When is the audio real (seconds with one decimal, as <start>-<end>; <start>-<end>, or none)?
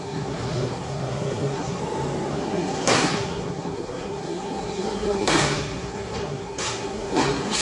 1.8-2.3